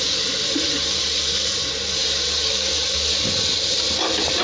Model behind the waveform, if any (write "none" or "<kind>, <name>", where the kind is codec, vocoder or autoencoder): none